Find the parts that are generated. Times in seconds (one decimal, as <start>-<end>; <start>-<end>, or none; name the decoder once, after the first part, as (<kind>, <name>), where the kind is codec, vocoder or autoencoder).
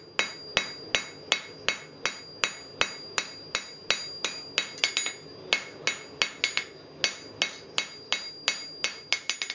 none